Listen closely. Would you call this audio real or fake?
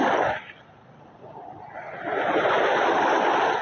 real